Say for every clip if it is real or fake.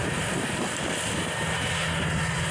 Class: real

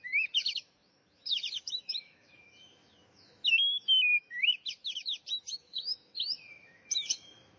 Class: fake